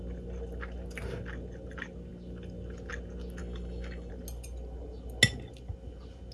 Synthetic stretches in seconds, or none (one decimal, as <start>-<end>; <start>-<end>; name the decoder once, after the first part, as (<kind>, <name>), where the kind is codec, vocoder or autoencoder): 3.4-4.1 (autoencoder, DAC-VAE)